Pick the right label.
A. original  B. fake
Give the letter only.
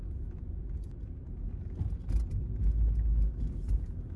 A